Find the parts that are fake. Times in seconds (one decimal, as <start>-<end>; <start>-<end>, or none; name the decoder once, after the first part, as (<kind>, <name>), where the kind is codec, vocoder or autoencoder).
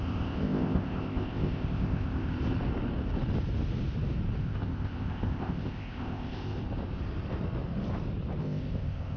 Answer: 0.0-2.3 (codec, ZipCodec); 4.4-6.6; 8.4-9.2